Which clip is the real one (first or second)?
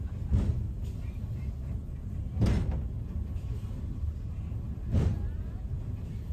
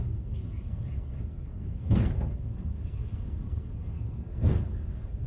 first